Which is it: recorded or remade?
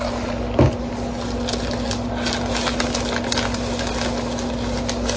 recorded